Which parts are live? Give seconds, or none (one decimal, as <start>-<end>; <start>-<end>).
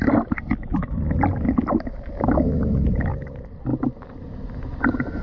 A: 0.0-5.2